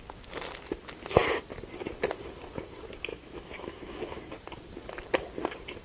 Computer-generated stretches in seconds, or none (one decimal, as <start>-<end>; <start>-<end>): 3.1-4.3